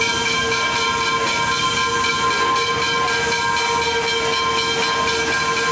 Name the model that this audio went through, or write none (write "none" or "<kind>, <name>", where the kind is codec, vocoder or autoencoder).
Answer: none